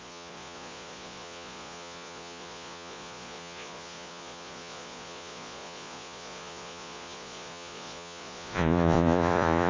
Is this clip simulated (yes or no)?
yes